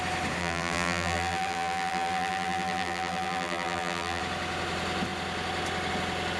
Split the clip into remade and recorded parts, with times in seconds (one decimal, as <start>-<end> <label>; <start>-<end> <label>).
0.0-0.4 recorded; 0.4-4.2 remade; 4.2-6.4 recorded